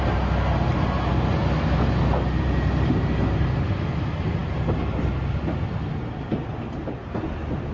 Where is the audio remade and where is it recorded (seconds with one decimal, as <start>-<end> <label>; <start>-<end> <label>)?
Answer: 0.0-7.7 recorded